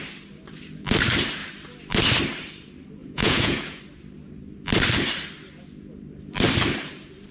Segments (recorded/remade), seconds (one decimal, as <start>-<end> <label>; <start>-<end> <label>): 0.0-3.0 recorded; 3.0-3.8 remade; 3.8-7.3 recorded